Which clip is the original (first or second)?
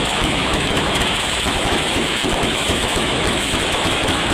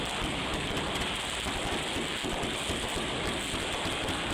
second